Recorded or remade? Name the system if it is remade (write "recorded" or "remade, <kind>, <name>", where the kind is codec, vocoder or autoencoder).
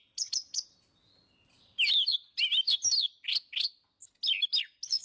recorded